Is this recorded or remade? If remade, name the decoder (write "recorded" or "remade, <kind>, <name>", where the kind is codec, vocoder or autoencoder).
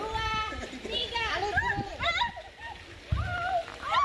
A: recorded